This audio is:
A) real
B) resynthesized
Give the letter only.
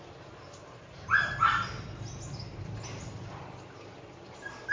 A